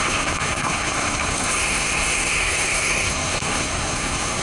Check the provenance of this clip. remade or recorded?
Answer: remade